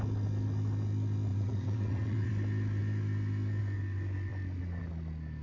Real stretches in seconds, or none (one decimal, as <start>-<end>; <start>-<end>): 0.0-1.3; 2.3-5.4